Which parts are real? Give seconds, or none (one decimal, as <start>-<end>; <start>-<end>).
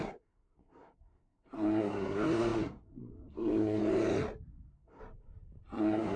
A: 3.8-4.5; 5.0-5.8